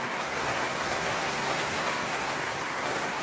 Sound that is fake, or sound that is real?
fake